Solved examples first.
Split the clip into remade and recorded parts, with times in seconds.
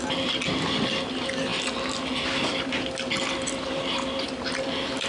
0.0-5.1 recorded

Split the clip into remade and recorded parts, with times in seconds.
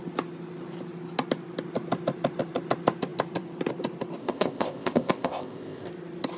0.0-4.2 recorded; 4.2-5.9 remade; 5.9-6.4 recorded